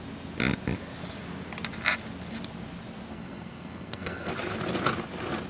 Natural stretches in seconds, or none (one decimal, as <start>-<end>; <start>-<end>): 0.0-3.1; 4.3-5.5